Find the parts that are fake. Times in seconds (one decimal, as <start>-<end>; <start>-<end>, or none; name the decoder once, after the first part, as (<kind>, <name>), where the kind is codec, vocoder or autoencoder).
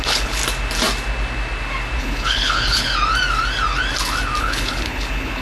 0.0-0.4 (codec, HILCodec); 2.0-2.9; 4.4-5.4